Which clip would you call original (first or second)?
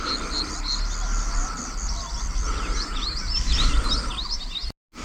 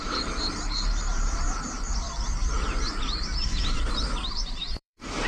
first